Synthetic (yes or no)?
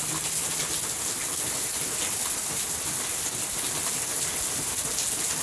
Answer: no